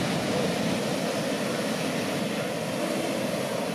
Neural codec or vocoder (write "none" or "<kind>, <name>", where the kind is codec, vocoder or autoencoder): none